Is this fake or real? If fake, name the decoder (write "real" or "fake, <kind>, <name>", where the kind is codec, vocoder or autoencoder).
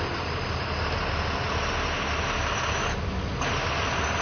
real